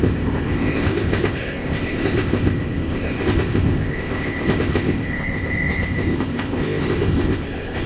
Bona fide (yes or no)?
no